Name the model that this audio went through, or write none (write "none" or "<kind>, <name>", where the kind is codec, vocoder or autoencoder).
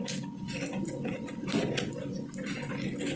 none